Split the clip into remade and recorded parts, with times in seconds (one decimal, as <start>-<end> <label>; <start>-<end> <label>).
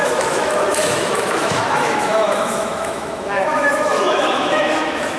0.0-5.2 remade